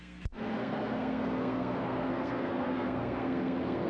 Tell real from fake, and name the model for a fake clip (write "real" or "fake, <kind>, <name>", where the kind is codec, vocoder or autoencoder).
fake, codec, SNAC